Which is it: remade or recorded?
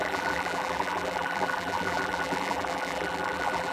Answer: remade